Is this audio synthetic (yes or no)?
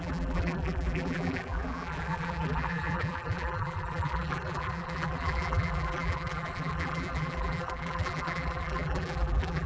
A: yes